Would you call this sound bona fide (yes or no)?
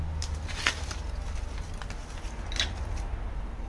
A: yes